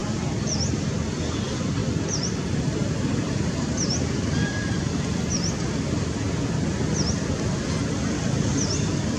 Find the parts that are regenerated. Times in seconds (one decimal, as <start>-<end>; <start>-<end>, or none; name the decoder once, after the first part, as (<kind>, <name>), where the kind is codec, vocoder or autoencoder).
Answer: 0.0-1.3 (vocoder, BigVGAN v2); 1.8-6.4